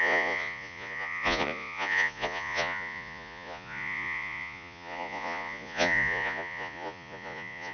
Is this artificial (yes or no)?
yes